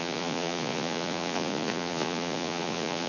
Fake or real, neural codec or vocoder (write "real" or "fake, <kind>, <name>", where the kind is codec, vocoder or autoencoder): fake, vocoder, Vocos